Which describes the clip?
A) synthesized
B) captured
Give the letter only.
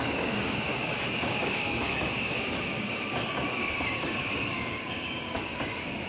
A